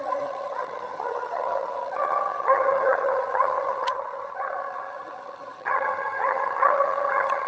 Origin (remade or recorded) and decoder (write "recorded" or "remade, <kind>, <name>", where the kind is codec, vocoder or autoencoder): remade, vocoder, HiFi-GAN